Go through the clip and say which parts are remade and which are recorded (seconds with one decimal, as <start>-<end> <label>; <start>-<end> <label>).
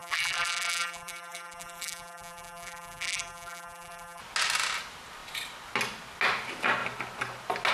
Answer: 0.0-4.2 remade; 4.2-7.7 recorded